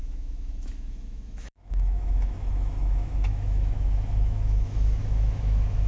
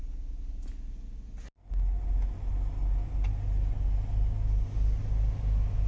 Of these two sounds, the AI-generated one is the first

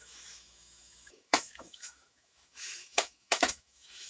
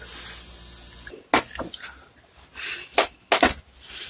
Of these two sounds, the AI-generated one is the first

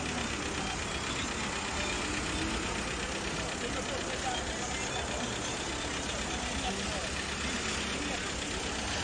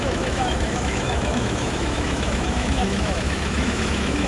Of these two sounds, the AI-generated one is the second